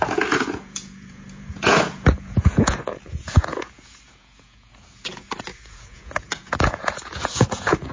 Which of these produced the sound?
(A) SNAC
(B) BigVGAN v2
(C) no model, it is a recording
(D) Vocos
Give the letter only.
D